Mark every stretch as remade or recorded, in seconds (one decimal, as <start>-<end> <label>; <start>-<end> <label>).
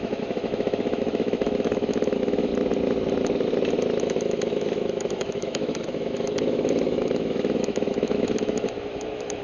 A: 0.0-2.5 remade; 2.5-4.0 recorded; 4.0-9.4 remade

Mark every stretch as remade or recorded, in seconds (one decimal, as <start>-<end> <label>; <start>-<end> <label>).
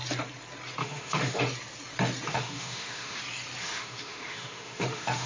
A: 0.0-0.8 recorded; 0.8-1.4 remade; 1.4-2.3 recorded; 2.3-3.2 remade; 3.2-3.6 recorded; 3.6-5.3 remade